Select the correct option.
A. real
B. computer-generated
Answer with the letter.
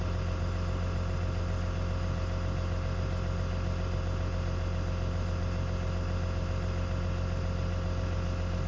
A